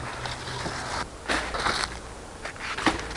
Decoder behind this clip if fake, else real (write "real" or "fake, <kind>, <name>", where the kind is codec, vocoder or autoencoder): real